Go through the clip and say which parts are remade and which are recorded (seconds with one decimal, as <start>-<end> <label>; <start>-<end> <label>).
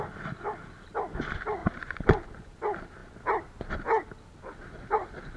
0.0-1.6 recorded; 1.6-2.5 remade; 2.5-5.4 recorded